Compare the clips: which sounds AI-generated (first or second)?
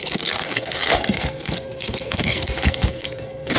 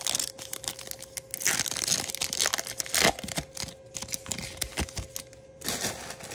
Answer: first